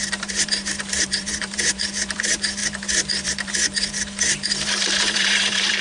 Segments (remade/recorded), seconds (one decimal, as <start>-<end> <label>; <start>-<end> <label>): 0.0-5.8 remade